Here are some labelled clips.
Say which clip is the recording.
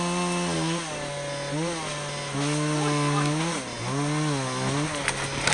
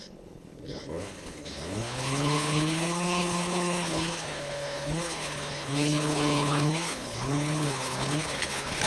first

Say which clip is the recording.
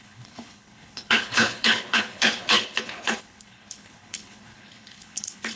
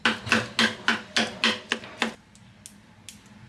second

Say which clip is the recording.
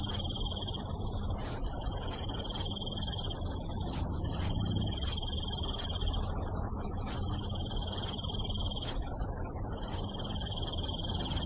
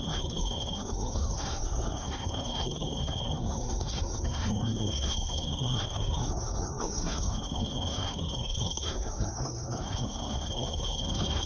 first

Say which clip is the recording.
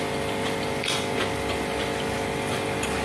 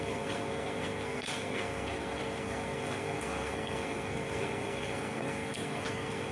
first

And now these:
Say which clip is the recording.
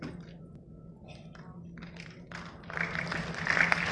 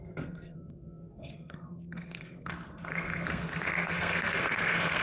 first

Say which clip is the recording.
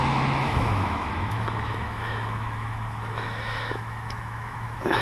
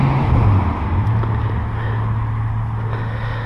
second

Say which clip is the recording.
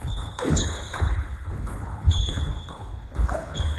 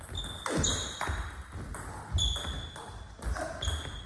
second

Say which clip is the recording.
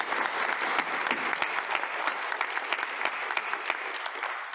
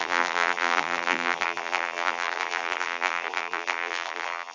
first